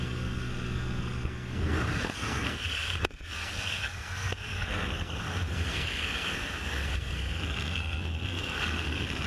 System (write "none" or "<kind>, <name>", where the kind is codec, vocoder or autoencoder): codec, SNAC